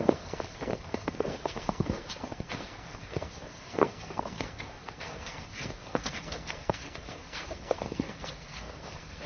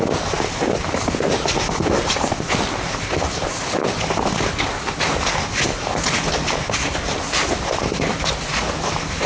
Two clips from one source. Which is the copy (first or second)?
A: first